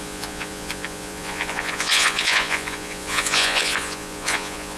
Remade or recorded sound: remade